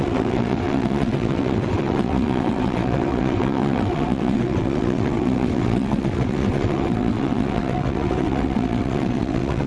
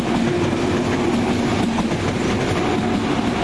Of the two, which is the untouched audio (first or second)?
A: second